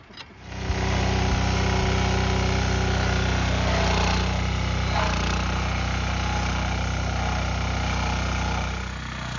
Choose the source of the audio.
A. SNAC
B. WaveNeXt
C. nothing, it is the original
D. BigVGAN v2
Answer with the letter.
C